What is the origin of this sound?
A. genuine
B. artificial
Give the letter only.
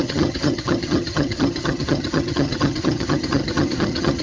B